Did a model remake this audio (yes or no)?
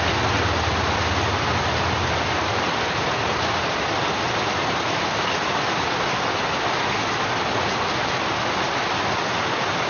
no